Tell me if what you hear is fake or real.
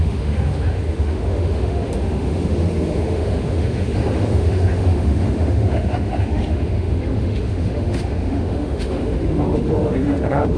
fake